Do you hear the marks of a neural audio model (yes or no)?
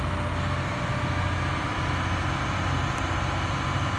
no